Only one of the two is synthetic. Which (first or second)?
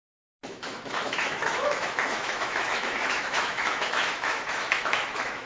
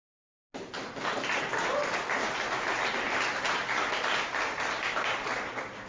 first